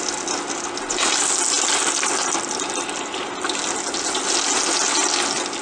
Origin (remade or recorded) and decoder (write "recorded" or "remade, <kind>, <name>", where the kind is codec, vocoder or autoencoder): recorded